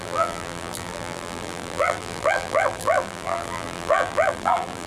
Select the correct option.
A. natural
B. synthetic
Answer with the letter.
B